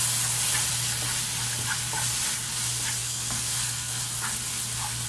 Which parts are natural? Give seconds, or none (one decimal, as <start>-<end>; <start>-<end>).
0.0-3.0; 4.0-5.1